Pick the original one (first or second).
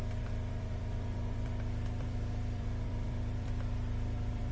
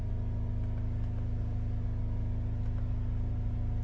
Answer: second